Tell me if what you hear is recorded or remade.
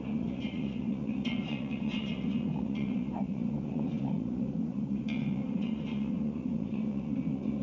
remade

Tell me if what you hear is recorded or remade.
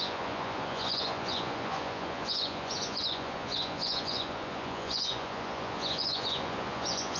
remade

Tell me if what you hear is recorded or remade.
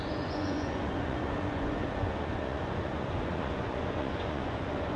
remade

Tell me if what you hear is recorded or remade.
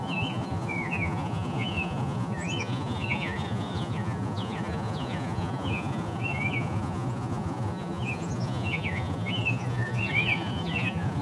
remade